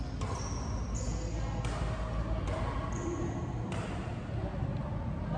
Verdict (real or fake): real